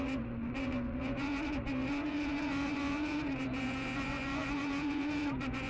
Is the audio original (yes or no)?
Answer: no